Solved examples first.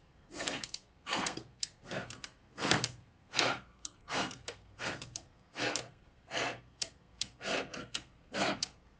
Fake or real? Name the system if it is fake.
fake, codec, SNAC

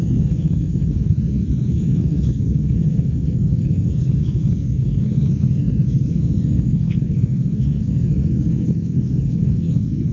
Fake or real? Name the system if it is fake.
fake, codec, SNAC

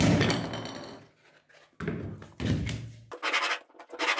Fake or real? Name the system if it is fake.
real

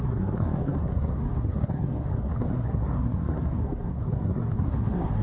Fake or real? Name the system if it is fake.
fake, codec, SNAC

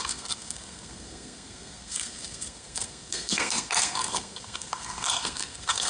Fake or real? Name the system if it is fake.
fake, codec, SNAC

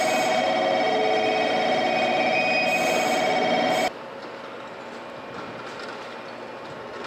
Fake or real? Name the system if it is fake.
real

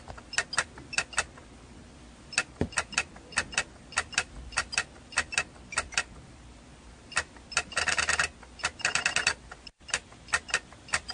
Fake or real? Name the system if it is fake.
real